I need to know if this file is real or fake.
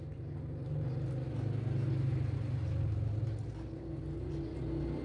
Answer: real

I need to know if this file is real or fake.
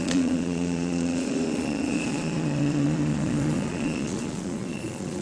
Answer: fake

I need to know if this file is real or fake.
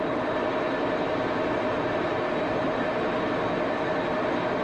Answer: real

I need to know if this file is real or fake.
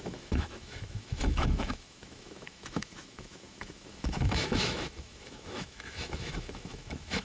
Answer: fake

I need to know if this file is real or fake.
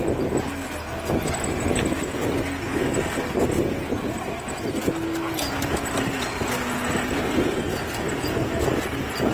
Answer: real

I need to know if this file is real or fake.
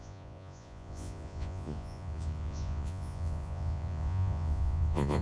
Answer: fake